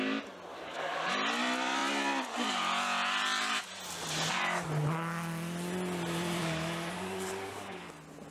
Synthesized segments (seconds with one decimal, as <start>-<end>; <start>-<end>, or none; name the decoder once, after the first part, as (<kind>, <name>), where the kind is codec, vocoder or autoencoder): 0.5-1.1 (codec, DAC); 6.4-7.9